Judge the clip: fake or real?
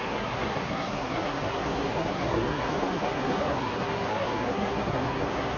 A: fake